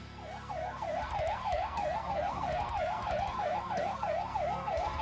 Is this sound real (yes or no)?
no